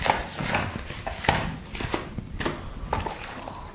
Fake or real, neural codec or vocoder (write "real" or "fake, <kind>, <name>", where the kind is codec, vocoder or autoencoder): real